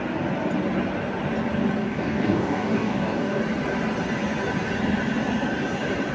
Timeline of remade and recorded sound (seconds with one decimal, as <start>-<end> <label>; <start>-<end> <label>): 0.0-1.8 recorded; 1.8-3.4 remade; 3.4-6.1 recorded